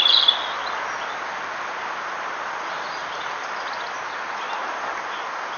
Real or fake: real